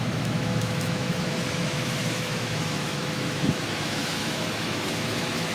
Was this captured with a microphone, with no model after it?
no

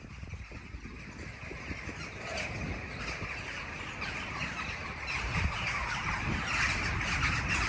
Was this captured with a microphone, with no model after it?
yes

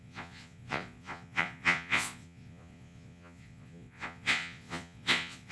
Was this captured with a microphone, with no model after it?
no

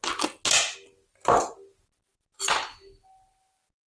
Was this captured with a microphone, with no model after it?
yes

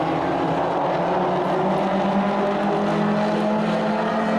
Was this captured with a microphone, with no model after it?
yes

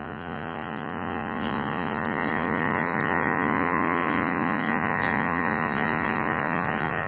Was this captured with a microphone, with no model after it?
no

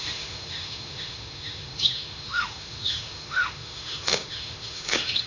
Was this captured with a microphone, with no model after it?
no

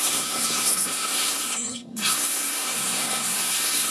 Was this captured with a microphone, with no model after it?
no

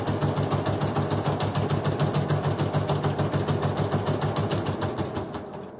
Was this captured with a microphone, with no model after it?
yes